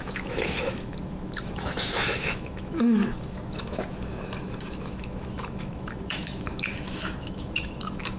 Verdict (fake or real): fake